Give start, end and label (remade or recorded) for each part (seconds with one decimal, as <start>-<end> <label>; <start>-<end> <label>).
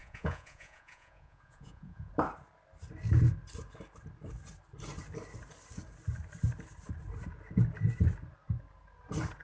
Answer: 0.0-2.1 remade; 2.1-9.4 recorded